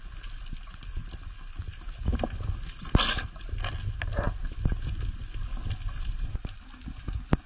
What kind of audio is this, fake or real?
real